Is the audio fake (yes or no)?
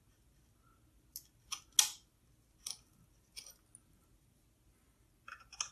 no